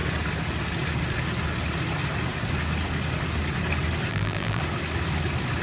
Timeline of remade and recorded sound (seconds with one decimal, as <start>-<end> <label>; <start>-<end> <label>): 0.0-4.1 recorded; 4.1-4.6 remade; 4.6-5.6 recorded